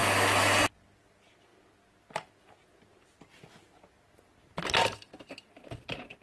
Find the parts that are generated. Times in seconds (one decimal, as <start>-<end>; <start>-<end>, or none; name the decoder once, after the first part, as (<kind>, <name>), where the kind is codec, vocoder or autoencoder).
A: none